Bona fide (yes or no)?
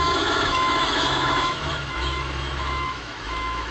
no